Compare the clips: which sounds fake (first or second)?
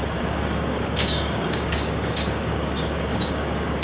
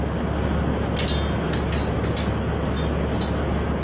first